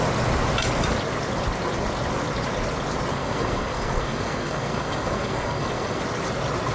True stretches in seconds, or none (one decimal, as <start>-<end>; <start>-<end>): 0.0-3.1; 6.0-6.7